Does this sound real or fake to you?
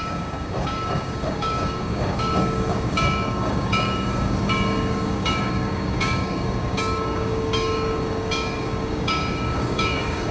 fake